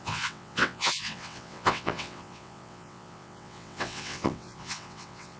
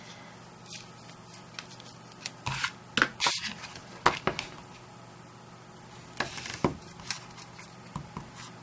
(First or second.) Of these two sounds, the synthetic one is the first